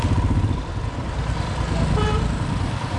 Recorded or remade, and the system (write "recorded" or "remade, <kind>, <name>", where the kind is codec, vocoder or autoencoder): recorded